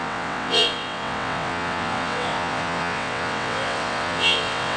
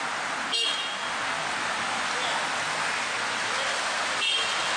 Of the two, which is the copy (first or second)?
first